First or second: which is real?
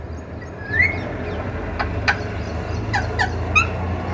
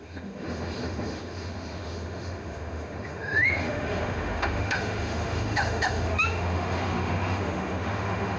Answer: first